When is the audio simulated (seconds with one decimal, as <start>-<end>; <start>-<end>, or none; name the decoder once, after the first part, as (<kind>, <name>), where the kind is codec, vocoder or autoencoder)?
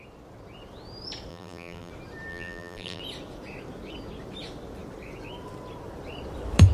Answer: 1.3-1.9 (vocoder, BigVGAN v2); 2.3-3.0